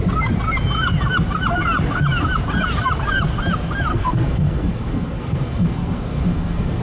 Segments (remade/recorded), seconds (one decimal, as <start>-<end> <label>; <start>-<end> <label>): 0.0-3.9 recorded; 3.9-6.8 remade